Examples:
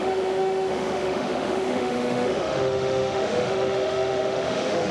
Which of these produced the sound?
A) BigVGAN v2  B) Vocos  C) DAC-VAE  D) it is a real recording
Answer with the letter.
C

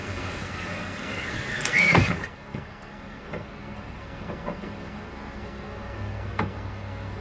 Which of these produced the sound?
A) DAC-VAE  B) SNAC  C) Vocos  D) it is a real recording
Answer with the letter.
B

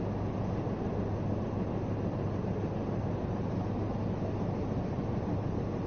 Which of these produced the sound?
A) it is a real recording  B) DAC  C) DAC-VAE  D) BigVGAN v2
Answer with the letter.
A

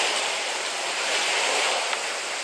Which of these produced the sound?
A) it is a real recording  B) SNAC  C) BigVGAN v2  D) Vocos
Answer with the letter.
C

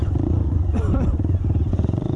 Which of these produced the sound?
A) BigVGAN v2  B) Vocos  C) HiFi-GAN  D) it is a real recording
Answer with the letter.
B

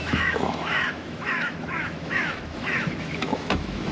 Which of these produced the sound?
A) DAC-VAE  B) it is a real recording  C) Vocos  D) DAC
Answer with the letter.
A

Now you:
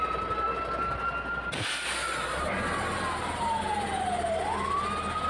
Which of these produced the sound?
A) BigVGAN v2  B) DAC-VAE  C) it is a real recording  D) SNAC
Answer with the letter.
C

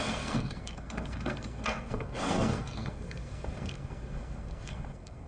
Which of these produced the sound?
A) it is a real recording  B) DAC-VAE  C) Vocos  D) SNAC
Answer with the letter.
D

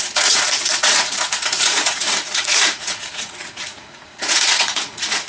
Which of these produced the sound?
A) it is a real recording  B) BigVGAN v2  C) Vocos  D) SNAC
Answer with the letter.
C